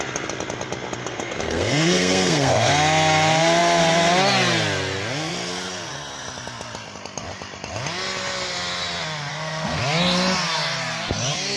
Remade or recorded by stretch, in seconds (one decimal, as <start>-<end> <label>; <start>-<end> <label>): 0.0-1.0 recorded; 1.0-2.7 remade; 2.7-9.3 recorded; 9.3-9.8 remade; 9.8-11.6 recorded